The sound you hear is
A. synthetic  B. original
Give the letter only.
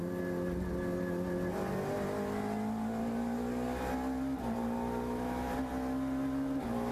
B